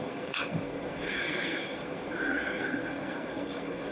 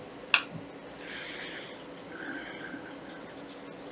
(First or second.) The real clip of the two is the second